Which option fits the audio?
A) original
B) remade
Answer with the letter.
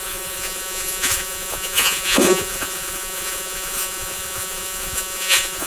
B